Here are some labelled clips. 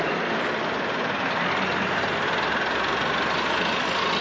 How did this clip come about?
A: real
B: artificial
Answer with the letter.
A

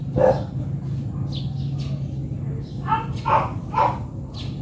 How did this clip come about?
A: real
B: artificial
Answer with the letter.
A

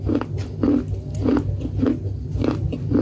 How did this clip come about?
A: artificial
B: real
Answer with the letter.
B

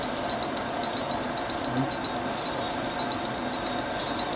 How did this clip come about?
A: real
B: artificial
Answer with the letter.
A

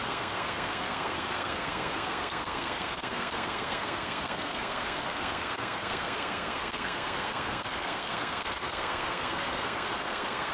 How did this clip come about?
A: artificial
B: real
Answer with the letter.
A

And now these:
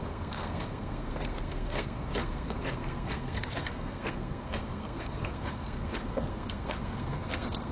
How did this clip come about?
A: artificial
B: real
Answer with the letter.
A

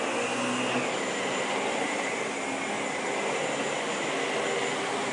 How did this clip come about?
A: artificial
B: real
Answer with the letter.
B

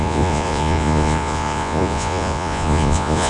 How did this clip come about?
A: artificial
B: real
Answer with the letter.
A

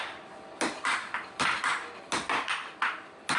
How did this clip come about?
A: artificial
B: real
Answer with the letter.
B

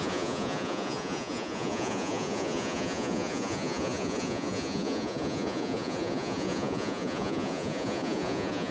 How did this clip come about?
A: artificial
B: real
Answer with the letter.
A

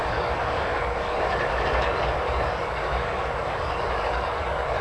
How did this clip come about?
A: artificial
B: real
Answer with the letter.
A